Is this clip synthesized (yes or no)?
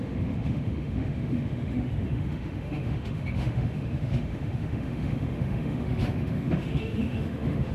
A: yes